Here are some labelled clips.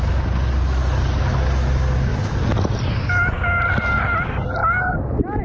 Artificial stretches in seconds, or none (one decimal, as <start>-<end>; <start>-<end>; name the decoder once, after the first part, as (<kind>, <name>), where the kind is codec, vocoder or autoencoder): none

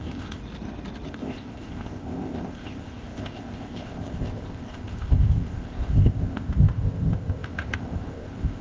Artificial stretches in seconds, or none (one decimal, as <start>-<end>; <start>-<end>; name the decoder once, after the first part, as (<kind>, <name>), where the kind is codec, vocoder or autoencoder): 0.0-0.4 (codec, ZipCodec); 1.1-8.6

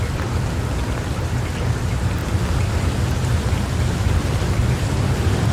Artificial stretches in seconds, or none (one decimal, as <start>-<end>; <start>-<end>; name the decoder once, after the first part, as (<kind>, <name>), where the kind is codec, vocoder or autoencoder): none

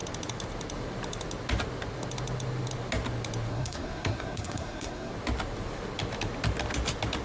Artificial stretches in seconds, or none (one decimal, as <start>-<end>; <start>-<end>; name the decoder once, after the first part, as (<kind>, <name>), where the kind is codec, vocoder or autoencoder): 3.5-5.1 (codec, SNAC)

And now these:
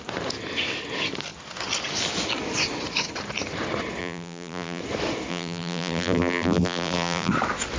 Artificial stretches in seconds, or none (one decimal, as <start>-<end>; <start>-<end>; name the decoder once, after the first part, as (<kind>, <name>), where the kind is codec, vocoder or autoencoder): 4.0-4.8 (vocoder, BigVGAN v2); 5.3-7.3

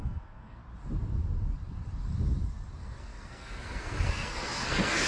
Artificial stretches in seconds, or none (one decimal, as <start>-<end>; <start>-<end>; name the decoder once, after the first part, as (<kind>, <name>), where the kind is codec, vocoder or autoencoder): 0.0-0.6 (codec, SNAC); 2.8-5.1